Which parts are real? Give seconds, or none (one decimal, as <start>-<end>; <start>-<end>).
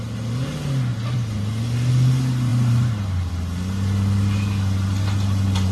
0.0-2.5; 3.3-5.7